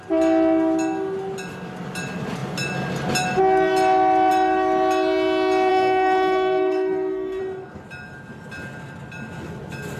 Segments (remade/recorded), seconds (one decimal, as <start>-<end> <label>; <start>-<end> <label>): 0.0-5.7 recorded; 5.7-7.4 remade; 7.4-10.0 recorded